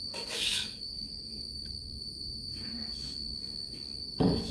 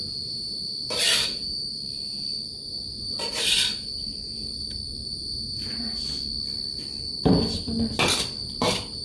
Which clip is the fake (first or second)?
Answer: first